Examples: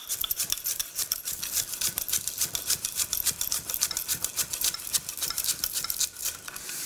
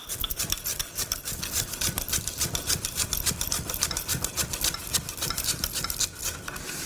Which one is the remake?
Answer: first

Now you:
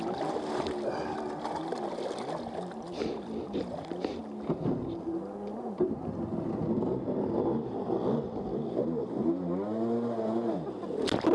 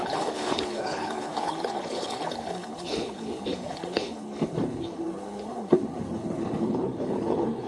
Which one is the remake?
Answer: second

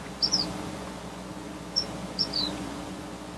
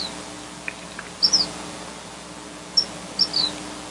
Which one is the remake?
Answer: first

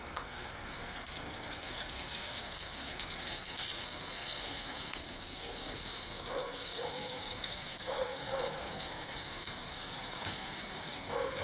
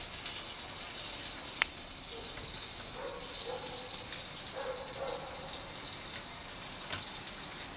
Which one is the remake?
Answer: first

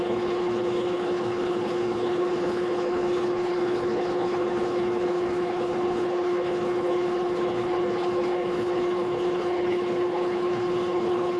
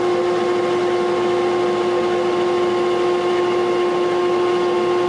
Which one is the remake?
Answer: first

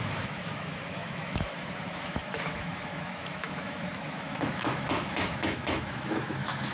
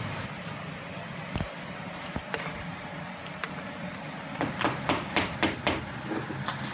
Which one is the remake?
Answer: first